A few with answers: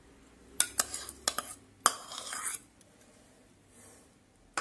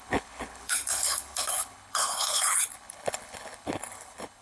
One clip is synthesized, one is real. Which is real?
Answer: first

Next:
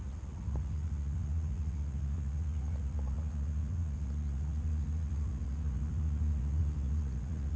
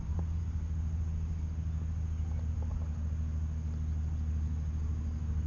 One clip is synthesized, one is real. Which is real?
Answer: second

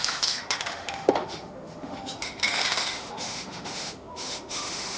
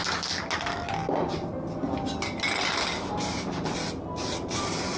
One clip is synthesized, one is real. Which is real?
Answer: second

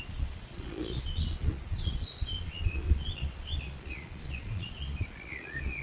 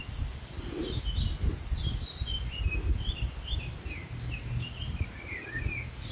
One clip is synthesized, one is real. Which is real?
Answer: second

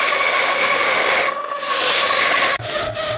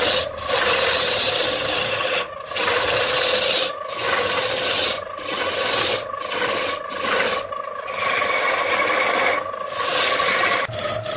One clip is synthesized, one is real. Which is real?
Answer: second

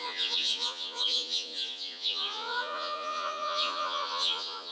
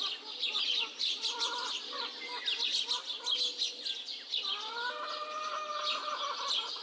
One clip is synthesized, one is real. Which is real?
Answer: second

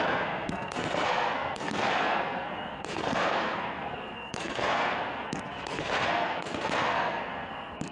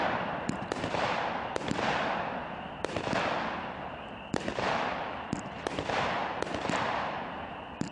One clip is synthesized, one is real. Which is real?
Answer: second